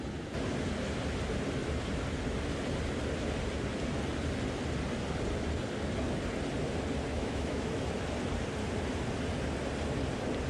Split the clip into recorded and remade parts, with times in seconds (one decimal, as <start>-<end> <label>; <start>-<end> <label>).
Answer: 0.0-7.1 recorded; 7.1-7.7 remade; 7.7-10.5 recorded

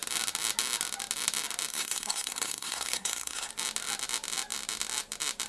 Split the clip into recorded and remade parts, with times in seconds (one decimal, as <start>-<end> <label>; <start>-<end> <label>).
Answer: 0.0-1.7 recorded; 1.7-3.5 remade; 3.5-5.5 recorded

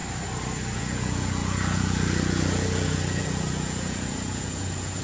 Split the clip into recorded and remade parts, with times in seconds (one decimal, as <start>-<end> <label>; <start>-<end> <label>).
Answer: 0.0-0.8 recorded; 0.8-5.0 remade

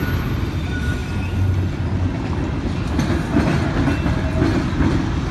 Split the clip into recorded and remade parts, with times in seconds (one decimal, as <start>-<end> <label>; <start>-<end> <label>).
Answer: 0.0-5.3 recorded

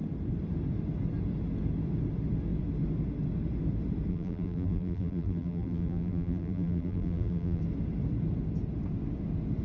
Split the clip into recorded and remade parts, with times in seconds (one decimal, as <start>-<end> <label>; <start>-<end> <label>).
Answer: 0.0-4.1 recorded; 4.1-7.6 remade; 7.6-9.6 recorded

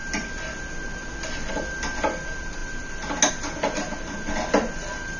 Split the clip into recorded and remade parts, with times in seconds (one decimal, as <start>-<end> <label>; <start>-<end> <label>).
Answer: 0.0-5.2 recorded